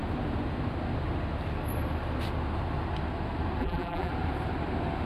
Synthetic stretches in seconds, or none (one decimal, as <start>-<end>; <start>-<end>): 3.6-4.1